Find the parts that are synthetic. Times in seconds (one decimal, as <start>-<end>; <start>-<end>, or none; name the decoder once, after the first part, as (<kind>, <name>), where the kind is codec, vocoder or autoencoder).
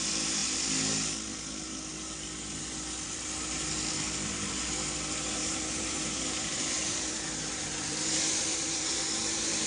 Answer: 5.4-9.7 (vocoder, BigVGAN v2)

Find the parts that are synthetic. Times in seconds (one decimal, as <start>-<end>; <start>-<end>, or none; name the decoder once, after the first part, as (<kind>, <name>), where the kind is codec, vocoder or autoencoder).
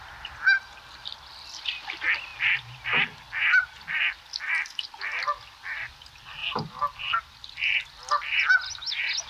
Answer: none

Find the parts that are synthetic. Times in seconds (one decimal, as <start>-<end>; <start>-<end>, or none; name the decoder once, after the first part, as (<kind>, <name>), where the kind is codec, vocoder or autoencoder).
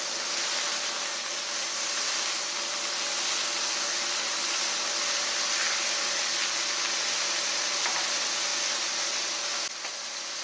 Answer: none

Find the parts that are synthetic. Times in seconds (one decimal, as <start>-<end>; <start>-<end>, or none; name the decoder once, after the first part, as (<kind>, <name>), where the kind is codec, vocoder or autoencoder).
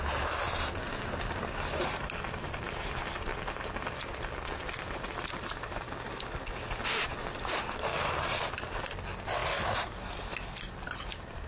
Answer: 7.9-8.8 (vocoder, BigVGAN v2); 9.4-10.1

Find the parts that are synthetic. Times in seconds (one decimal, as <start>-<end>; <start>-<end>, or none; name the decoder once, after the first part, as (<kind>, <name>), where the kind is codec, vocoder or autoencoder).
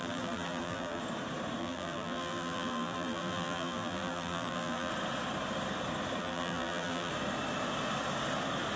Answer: 0.0-1.0 (vocoder, BigVGAN v2); 1.6-4.9; 6.2-7.1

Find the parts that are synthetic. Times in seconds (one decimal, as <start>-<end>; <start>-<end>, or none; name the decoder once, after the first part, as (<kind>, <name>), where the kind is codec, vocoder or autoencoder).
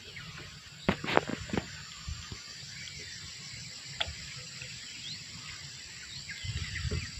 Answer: none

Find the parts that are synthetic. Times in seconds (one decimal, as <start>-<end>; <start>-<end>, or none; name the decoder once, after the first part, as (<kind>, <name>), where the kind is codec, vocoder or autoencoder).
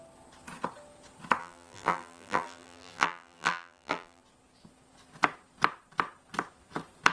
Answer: 1.4-4.2 (vocoder, BigVGAN v2)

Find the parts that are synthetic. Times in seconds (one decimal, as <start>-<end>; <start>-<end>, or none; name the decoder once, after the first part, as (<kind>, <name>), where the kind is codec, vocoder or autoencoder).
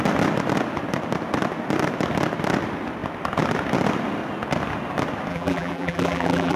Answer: 5.3-6.6 (vocoder, BigVGAN v2)